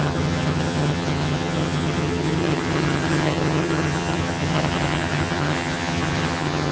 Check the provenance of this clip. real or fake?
fake